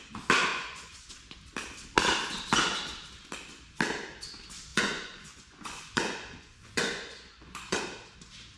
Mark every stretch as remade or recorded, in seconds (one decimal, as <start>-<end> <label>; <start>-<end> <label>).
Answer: 0.0-0.5 recorded; 0.5-1.1 remade; 1.1-4.7 recorded; 4.7-7.8 remade; 7.8-8.6 recorded